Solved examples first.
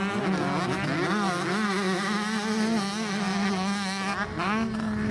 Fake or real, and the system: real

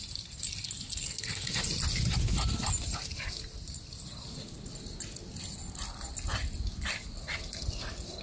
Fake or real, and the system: real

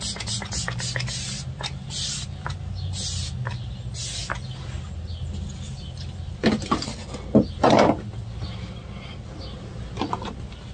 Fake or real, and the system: real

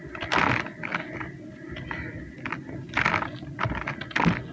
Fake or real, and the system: real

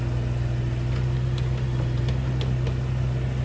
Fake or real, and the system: real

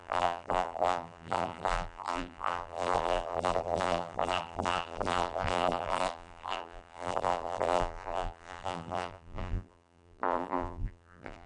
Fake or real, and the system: fake, vocoder, BigVGAN v2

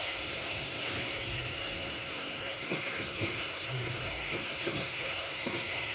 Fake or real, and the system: fake, codec, SNAC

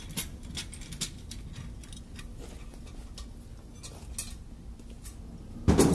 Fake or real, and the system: real